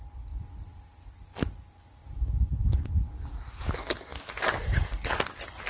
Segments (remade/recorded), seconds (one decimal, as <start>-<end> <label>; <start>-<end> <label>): 0.0-5.7 recorded